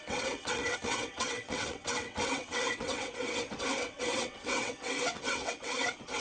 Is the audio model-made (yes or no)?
yes